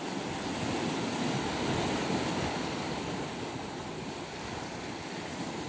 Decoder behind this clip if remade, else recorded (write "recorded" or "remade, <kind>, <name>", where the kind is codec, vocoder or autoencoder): recorded